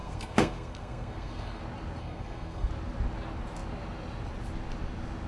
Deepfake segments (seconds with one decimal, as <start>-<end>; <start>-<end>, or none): 0.0-1.6; 2.0-2.7